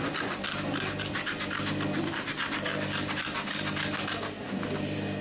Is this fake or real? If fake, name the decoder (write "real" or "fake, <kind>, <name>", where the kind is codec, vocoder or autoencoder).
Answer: real